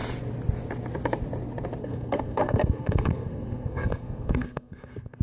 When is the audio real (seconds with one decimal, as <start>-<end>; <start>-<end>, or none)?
0.0-1.8